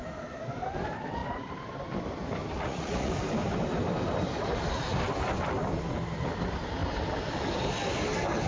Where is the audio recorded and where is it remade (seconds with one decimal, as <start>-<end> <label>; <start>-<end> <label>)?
0.0-2.5 recorded; 2.5-3.1 remade; 3.1-8.5 recorded